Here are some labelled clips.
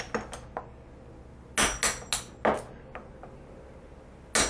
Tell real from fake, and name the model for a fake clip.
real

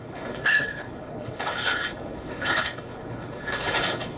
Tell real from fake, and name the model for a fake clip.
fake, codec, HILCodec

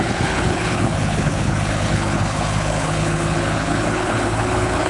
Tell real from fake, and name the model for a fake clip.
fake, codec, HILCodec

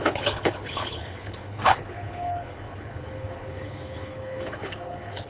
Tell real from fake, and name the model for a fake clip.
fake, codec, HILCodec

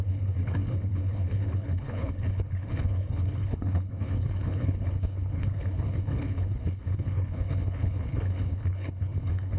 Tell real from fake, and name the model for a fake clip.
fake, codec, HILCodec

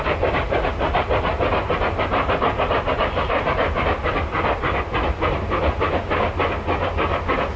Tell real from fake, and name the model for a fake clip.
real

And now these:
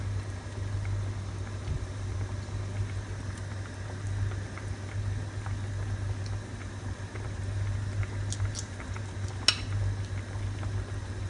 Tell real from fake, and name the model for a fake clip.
real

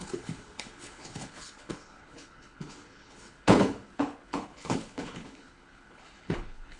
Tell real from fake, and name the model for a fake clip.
fake, codec, HILCodec